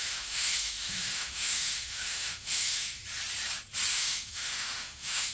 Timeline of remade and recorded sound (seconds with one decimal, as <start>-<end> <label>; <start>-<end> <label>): 0.0-3.0 remade; 3.0-3.9 recorded; 3.9-5.3 remade